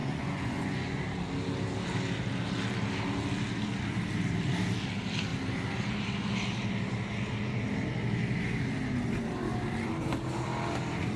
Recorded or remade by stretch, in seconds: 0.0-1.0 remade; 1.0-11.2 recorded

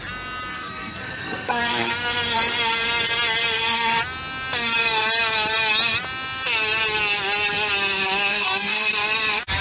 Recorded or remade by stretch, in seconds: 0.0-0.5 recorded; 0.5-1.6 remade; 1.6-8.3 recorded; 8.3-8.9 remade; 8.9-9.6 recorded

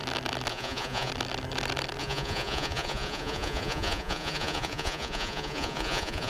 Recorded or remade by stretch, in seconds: 0.0-0.5 recorded; 0.5-1.1 remade; 1.1-2.0 recorded; 2.0-6.3 remade